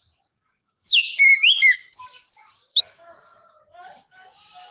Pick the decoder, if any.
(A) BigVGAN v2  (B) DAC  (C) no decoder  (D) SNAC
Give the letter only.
B